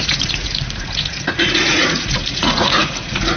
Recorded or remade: remade